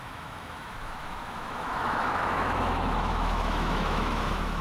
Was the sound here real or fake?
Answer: fake